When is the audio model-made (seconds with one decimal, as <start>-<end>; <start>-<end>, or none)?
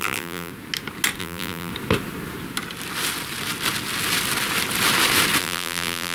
0.0-0.5; 1.2-1.7; 5.4-6.1